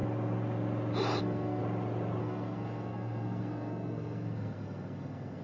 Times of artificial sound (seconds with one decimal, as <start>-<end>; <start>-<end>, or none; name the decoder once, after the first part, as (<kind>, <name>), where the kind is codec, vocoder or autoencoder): 1.2-1.6 (codec, SNAC); 2.2-5.4